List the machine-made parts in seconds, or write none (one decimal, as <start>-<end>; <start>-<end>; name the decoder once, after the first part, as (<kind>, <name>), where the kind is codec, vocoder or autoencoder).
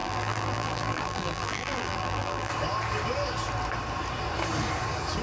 0.0-2.5 (vocoder, BigVGAN v2)